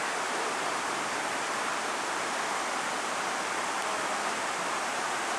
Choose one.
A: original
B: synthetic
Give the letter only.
A